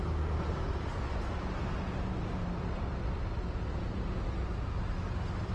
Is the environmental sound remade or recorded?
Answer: recorded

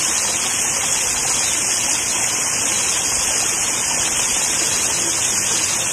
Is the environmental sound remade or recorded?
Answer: recorded